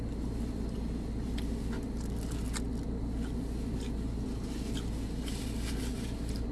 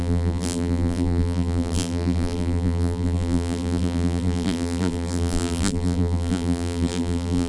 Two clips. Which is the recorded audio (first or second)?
first